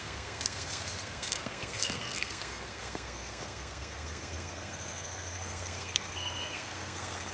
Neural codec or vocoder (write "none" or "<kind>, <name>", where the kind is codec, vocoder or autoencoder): codec, SNAC